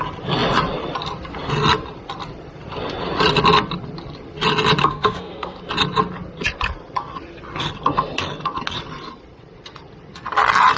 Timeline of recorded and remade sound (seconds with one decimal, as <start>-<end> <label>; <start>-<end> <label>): 0.0-4.8 recorded; 4.8-5.6 remade; 5.6-10.8 recorded